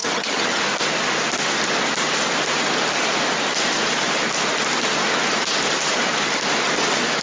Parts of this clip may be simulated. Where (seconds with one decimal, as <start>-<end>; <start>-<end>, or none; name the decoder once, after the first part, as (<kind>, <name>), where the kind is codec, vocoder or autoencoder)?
0.0-0.6 (vocoder, HiFi-GAN)